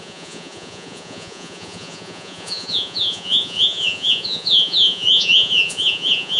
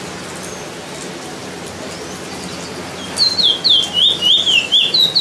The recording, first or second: second